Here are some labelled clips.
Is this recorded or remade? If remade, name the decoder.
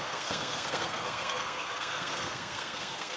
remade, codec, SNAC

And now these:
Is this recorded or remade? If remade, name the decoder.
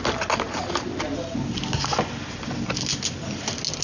recorded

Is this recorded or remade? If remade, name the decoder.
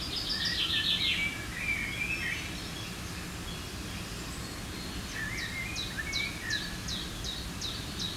recorded